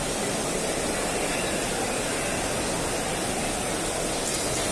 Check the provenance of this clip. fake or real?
real